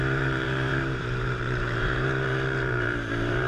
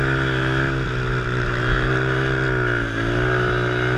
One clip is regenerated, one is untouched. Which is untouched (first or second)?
second